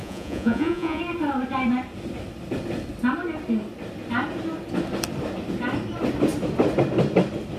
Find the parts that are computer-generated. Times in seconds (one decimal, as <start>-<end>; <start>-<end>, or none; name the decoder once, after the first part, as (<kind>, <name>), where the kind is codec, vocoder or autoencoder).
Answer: 0.0-1.0 (vocoder, Vocos)